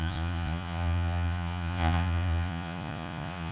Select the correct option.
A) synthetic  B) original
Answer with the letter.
A